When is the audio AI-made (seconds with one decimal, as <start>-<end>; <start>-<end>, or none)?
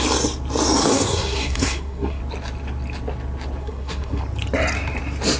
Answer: 0.8-2.2; 3.6-4.2